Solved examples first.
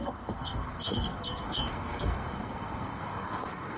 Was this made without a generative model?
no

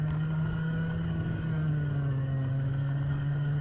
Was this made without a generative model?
no